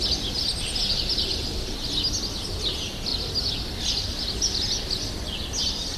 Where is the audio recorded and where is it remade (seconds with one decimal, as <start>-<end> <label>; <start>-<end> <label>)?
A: 0.0-6.0 recorded